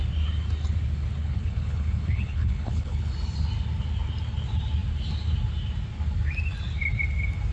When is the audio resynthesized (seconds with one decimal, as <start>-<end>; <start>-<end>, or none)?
1.2-3.1